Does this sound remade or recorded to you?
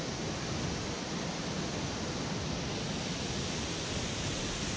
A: recorded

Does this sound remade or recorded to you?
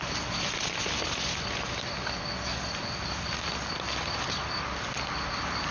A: recorded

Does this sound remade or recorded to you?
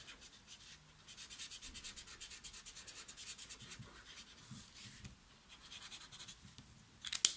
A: recorded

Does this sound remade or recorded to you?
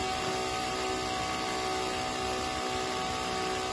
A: recorded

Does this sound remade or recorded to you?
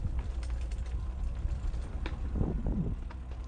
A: recorded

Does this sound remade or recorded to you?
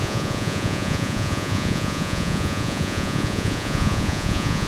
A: remade